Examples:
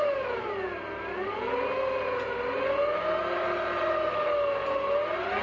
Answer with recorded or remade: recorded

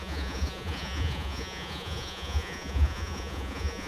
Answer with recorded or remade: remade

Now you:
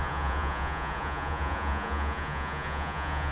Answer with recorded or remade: remade